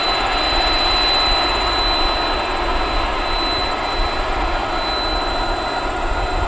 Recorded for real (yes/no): yes